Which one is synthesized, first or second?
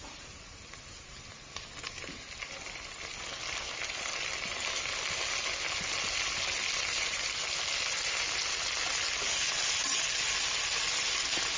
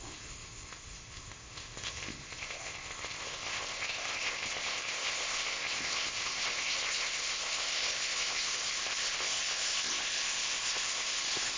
second